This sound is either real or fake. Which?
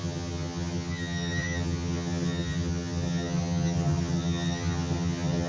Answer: fake